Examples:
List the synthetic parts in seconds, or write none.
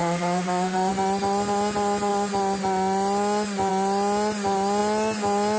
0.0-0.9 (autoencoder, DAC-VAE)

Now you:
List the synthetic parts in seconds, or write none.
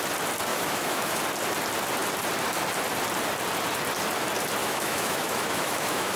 0.5-1.2 (autoencoder, DAC-VAE); 4.6-6.2